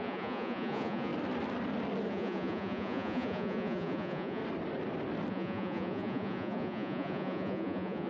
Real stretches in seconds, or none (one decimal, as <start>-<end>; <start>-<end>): 1.1-2.1; 4.4-5.3